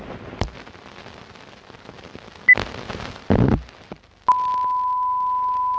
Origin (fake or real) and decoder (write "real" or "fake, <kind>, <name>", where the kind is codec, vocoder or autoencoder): real